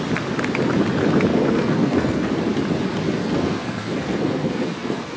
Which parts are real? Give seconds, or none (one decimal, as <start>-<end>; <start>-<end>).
0.0-1.3; 2.3-3.2